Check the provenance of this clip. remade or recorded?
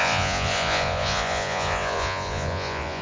remade